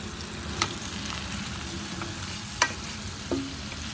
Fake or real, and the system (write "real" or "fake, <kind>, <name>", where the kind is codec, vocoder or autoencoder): real